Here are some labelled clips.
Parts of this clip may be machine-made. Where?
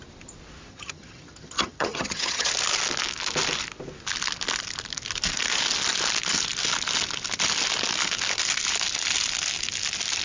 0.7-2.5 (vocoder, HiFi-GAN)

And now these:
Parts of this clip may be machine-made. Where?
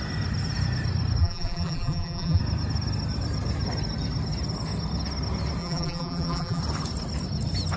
1.2-2.4 (vocoder, BigVGAN v2); 5.6-6.6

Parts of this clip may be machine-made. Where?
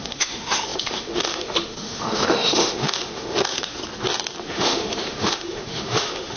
0.0-3.8 (autoencoder, DAC-VAE); 4.4-6.4